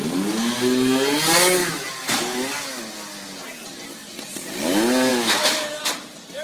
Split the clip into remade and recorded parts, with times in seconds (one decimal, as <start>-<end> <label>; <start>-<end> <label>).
0.0-1.6 recorded; 1.6-2.8 remade; 2.8-5.1 recorded; 5.1-5.8 remade; 5.8-6.4 recorded